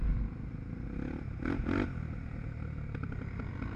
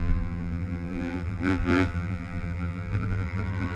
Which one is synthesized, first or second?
second